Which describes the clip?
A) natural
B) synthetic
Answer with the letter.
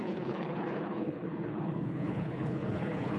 B